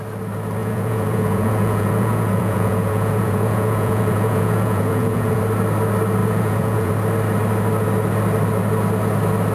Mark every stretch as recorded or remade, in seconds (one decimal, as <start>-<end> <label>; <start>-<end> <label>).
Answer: 0.0-0.6 recorded; 0.6-5.4 remade; 5.4-6.2 recorded; 6.2-6.9 remade; 6.9-9.5 recorded